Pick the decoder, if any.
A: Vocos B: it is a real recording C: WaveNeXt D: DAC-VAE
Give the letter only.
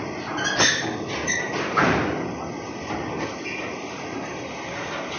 B